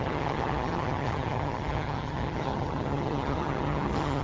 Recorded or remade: remade